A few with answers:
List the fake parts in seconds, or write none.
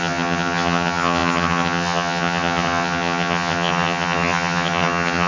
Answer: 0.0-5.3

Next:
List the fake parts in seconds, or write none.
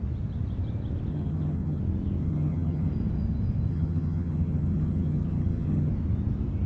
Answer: 1.1-1.8; 2.2-2.9; 3.7-5.9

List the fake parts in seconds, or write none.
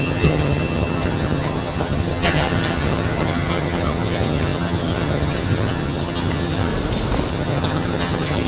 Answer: 0.0-6.7; 7.3-8.5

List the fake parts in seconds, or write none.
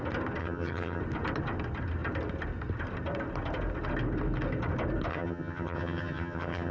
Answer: 0.4-1.0; 5.1-6.7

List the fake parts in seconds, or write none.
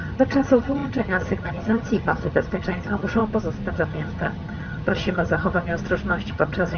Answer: 0.0-3.2; 3.7-5.7; 6.3-6.8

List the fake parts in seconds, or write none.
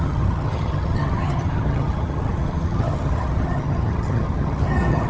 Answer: 0.0-5.1